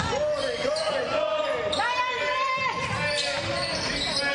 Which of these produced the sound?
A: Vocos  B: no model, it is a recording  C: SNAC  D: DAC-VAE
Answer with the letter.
B